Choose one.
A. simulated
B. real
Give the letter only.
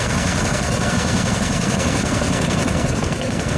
A